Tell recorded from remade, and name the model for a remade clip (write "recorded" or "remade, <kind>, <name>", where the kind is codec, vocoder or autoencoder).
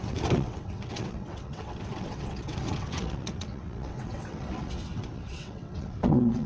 remade, vocoder, WaveNeXt